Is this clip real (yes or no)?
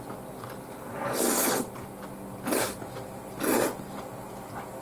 yes